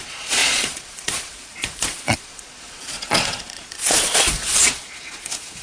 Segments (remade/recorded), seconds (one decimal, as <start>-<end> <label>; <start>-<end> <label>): 0.0-5.6 remade